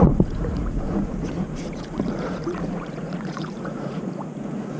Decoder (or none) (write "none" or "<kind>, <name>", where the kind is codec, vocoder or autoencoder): vocoder, Vocos